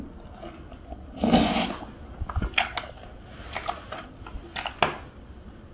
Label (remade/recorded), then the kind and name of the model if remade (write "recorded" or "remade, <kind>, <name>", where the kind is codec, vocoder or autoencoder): recorded